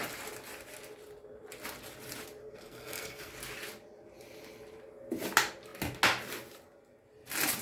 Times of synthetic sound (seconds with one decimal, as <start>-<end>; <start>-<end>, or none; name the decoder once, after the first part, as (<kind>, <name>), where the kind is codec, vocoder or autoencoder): 2.4-3.3 (codec, SNAC)